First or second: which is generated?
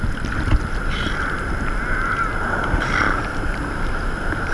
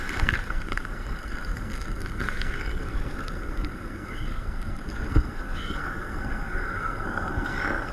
second